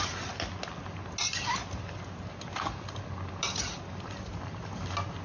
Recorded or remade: recorded